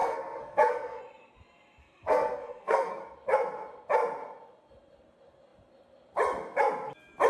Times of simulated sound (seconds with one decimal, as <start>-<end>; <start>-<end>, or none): 0.0-1.0; 1.8-3.0